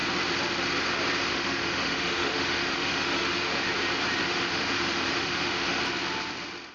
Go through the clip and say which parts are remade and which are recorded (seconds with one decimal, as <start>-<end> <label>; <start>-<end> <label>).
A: 0.0-1.3 recorded; 1.3-3.7 remade; 3.7-4.2 recorded; 4.2-5.8 remade; 5.8-6.7 recorded